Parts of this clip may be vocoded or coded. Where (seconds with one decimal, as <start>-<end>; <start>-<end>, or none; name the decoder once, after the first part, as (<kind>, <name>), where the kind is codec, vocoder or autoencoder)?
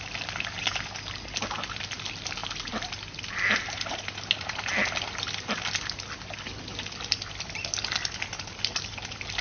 none